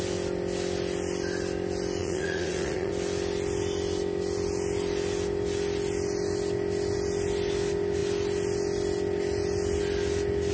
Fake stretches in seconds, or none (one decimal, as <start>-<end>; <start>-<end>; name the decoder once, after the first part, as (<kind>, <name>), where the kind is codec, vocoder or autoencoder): 2.0-2.9 (vocoder, Vocos)